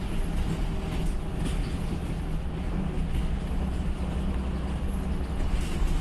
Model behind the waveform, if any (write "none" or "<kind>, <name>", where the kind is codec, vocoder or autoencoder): none